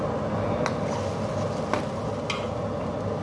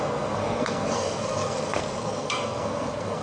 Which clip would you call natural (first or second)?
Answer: first